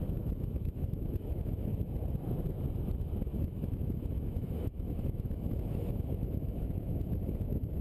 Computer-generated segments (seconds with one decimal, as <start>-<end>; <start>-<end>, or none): 0.0-1.7; 3.0-7.8